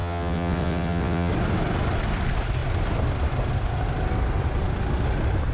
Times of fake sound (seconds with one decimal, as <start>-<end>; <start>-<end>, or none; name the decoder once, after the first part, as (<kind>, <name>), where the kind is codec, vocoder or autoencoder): 0.0-1.3 (vocoder, WaveNeXt)